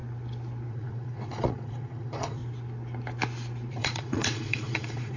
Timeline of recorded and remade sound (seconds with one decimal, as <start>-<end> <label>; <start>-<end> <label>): 0.0-0.7 recorded; 0.7-2.4 remade; 2.4-3.7 recorded; 3.7-5.2 remade